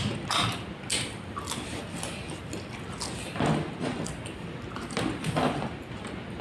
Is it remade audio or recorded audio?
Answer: recorded